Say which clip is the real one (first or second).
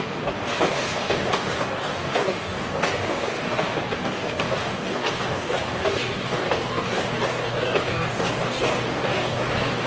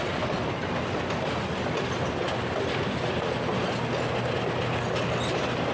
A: second